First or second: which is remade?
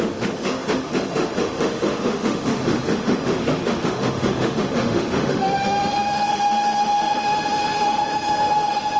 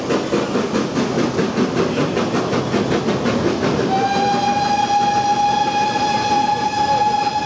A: first